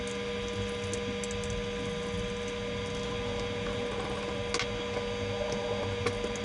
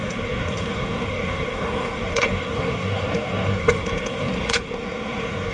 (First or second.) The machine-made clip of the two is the second